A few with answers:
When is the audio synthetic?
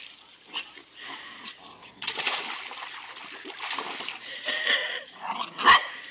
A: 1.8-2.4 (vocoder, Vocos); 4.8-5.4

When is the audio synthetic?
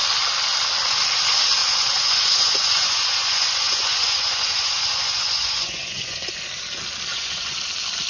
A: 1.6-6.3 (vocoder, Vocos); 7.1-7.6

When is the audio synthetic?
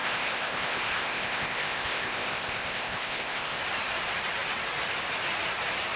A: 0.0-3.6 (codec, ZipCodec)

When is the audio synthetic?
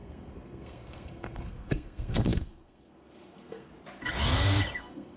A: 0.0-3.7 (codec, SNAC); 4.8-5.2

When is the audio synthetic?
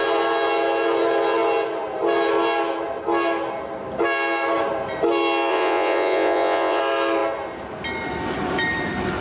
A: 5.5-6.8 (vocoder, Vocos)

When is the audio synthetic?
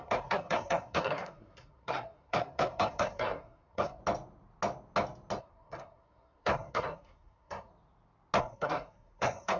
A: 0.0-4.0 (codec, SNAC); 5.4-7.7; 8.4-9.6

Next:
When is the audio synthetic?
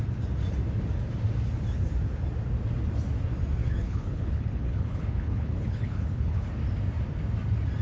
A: 3.6-6.5 (codec, HILCodec)